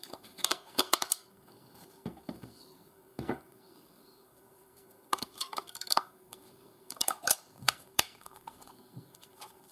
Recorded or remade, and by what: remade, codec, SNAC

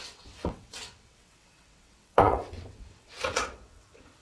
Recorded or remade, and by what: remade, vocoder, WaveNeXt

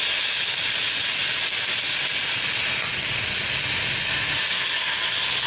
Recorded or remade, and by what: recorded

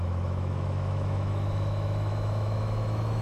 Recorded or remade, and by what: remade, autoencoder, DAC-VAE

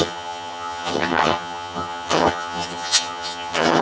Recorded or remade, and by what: remade, vocoder, HiFi-GAN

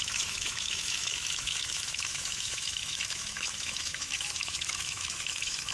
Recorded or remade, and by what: remade, autoencoder, DAC-VAE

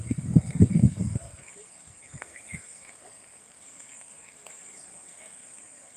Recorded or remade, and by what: remade, codec, SNAC